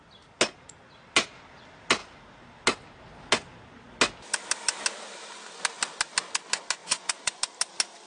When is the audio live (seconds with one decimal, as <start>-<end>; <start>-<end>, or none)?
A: 0.0-6.8; 7.4-8.1